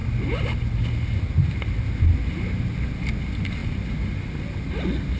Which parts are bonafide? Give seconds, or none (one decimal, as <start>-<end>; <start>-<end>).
0.0-5.2